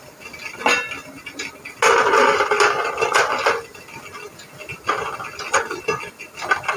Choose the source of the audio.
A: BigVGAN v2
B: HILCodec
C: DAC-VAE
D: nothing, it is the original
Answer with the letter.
D